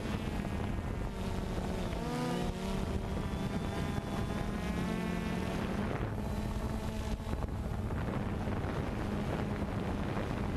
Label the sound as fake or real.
real